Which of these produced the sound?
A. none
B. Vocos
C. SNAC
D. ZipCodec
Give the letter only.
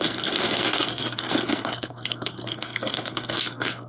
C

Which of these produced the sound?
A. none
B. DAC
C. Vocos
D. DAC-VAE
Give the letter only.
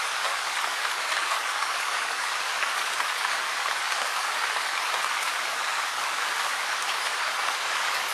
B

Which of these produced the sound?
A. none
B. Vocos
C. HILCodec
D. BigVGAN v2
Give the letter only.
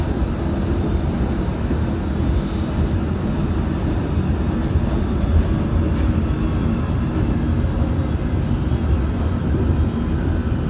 A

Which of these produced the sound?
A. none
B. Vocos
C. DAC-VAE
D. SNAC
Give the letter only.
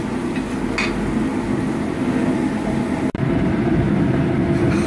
A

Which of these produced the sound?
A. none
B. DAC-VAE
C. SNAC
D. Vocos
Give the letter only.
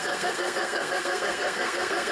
C